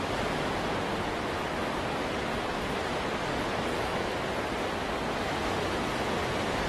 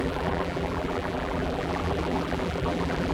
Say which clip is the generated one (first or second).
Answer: second